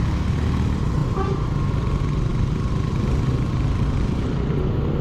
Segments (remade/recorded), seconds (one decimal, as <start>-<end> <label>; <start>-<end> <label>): 0.0-5.0 recorded